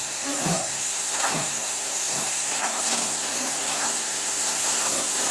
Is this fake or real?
fake